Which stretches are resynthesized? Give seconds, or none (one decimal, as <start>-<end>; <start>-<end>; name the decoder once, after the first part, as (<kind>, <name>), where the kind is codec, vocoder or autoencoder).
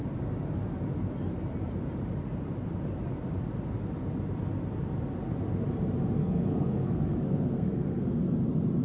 6.2-8.2 (codec, SNAC)